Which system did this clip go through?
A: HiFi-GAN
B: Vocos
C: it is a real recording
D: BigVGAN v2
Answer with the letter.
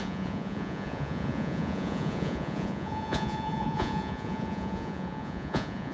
B